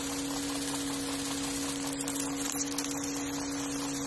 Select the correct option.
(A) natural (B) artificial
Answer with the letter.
A